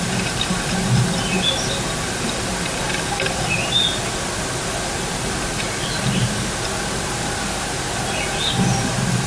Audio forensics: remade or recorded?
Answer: recorded